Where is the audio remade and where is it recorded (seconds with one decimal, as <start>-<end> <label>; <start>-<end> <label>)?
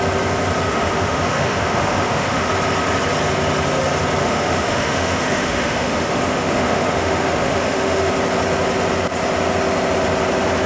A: 0.0-0.7 recorded; 0.7-2.5 remade; 2.5-4.2 recorded; 4.2-8.1 remade; 8.1-10.7 recorded